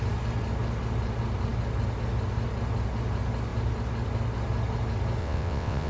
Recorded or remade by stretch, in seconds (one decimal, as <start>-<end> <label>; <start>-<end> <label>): 0.0-5.2 recorded; 5.2-5.9 remade